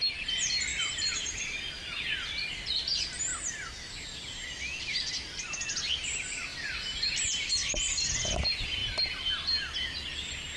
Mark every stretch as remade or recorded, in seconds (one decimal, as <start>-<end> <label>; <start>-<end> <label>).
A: 0.0-0.7 recorded; 0.7-1.6 remade; 1.6-3.3 recorded; 3.3-5.1 remade; 5.1-10.6 recorded